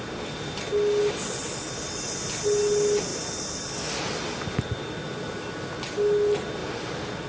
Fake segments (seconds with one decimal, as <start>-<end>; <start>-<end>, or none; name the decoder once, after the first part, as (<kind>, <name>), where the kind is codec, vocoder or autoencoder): none